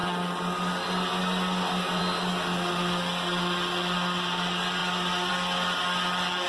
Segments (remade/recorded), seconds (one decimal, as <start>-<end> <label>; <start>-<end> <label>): 0.0-6.5 recorded